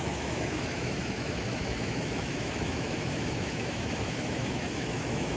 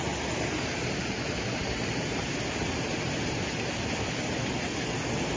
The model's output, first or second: first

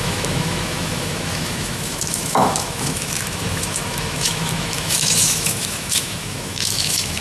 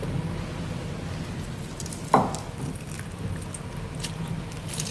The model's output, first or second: first